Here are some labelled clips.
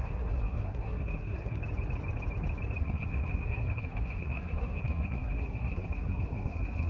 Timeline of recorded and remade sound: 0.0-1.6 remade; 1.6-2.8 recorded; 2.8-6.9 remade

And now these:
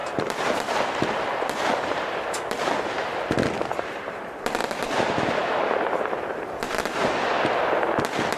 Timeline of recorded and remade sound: 0.0-3.4 remade; 3.4-4.6 recorded; 4.6-7.1 remade; 7.1-8.4 recorded